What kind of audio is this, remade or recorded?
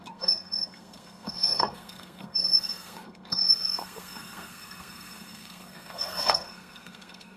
remade